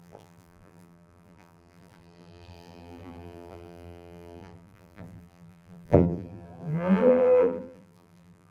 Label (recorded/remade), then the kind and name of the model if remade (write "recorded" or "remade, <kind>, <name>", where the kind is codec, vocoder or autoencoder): remade, vocoder, BigVGAN v2